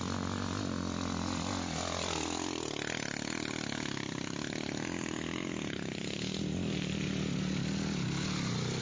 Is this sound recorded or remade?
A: recorded